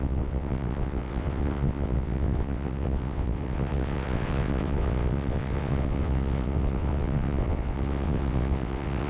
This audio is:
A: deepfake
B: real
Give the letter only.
A